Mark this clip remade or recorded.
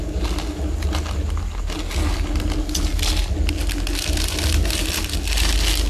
recorded